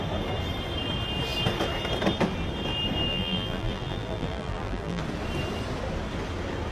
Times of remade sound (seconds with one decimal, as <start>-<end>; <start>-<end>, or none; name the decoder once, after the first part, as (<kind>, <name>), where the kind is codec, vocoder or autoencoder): 3.1-5.0 (vocoder, BigVGAN v2)